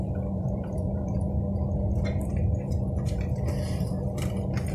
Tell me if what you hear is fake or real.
real